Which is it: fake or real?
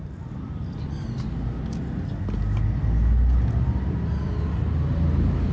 real